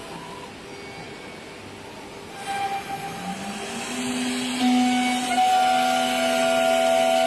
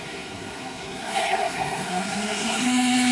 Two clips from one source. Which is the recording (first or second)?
first